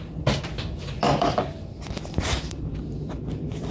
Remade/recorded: remade